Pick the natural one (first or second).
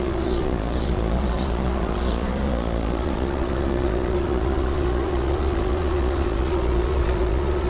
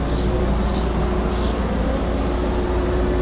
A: second